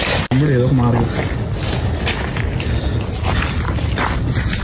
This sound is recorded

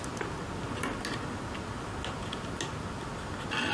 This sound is recorded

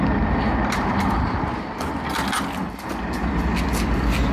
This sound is recorded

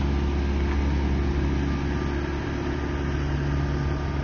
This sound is recorded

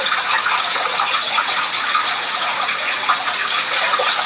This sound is remade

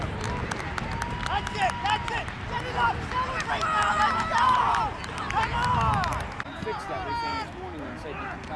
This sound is recorded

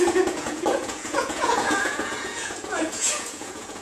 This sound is remade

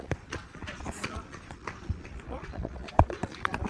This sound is remade